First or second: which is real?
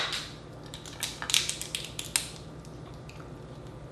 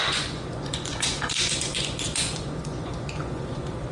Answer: first